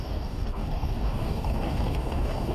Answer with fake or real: fake